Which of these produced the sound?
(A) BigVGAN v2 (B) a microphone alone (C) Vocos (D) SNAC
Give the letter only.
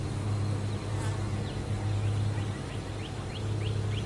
B